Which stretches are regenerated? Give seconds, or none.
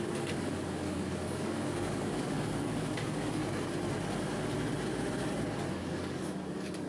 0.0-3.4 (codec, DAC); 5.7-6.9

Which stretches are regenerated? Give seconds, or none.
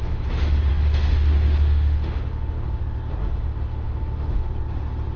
0.7-2.8 (autoencoder, DAC-VAE); 3.2-4.5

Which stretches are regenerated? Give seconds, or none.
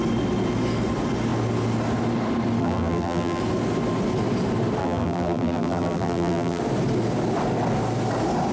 2.6-3.4 (vocoder, BigVGAN v2); 4.8-6.6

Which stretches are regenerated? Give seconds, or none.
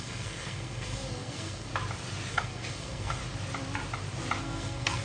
0.0-1.7 (codec, SNAC); 2.3-3.2; 4.4-5.0